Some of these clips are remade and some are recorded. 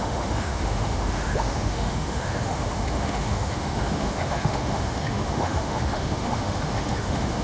remade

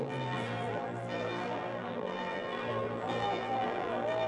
remade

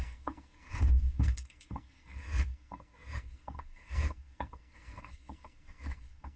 remade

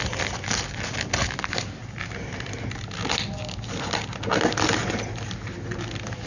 recorded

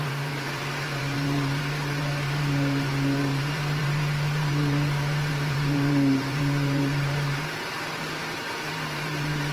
remade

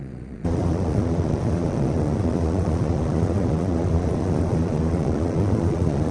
remade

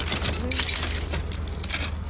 recorded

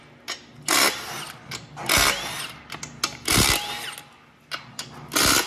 recorded